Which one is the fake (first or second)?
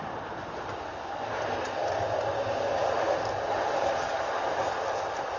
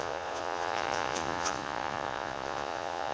second